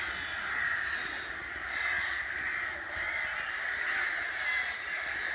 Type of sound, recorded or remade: recorded